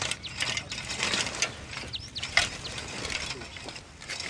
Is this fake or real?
real